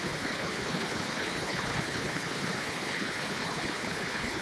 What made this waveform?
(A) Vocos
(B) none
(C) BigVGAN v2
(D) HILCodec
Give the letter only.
D